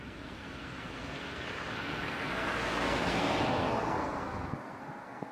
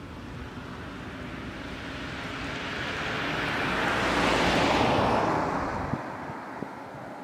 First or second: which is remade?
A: first